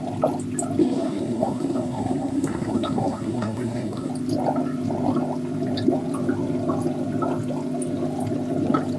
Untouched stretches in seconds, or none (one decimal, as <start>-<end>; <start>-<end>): 0.0-0.8; 4.1-9.0